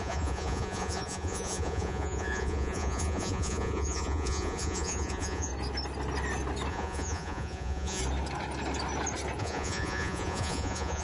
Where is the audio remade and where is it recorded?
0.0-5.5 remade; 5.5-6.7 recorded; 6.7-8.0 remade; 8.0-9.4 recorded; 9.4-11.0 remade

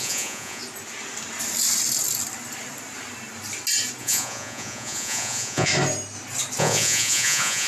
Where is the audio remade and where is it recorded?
0.0-0.6 remade; 0.6-4.0 recorded; 4.0-5.7 remade; 5.7-6.6 recorded; 6.6-7.7 remade

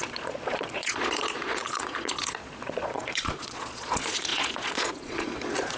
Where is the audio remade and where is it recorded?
0.0-5.8 remade

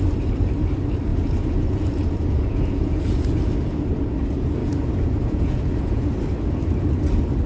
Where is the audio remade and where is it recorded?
0.0-1.1 recorded; 1.1-3.4 remade; 3.4-4.6 recorded; 4.6-6.0 remade; 6.0-7.5 recorded

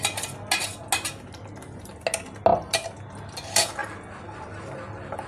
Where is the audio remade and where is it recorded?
0.0-5.3 recorded